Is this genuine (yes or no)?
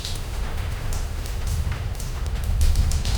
no